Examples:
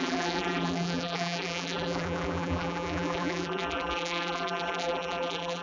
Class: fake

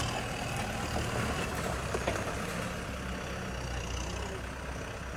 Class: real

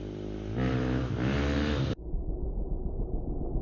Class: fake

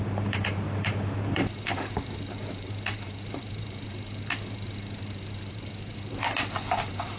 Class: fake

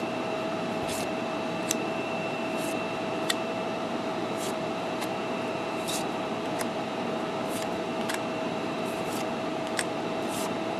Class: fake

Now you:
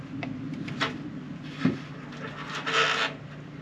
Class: real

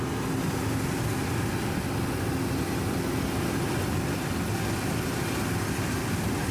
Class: real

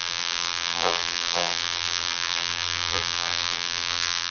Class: fake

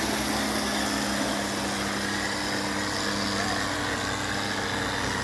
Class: real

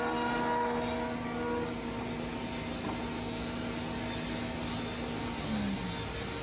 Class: real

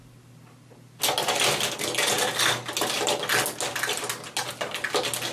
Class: real